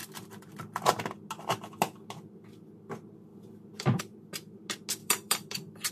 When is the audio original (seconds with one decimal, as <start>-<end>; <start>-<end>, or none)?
0.5-3.3; 4.0-5.0